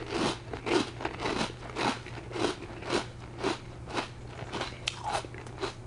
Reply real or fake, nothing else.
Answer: real